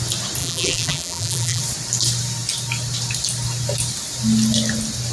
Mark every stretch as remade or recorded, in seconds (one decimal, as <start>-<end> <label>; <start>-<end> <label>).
0.0-0.4 recorded; 0.4-1.6 remade; 1.6-5.1 recorded